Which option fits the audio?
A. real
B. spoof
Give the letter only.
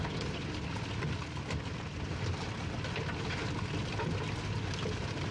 A